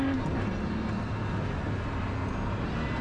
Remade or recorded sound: recorded